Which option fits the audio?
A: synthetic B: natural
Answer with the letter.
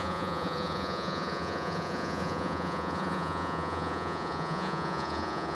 A